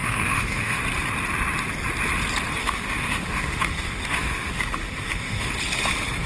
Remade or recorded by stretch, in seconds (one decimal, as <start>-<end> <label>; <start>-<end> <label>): 0.0-0.8 remade; 0.8-2.6 recorded; 2.6-5.5 remade; 5.5-6.3 recorded